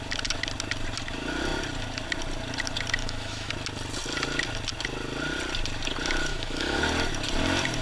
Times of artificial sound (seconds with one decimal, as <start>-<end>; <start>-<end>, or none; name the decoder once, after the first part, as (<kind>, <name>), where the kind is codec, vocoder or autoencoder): 3.0-3.5 (autoencoder, DAC-VAE); 6.3-6.8